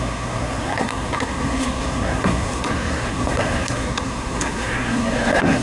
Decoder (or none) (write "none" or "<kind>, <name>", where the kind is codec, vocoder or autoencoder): codec, SNAC